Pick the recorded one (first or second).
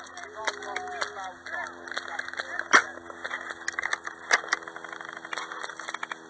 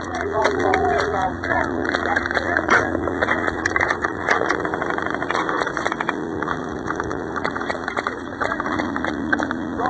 first